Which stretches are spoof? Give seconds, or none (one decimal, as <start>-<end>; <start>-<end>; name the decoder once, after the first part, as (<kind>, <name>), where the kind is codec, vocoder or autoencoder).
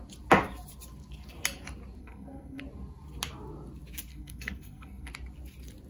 2.0-2.6 (codec, SNAC); 4.1-5.1